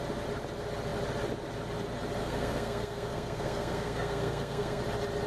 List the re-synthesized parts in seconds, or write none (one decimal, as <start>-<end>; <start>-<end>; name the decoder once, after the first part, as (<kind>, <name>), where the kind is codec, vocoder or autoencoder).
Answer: 2.2-4.8 (codec, SNAC)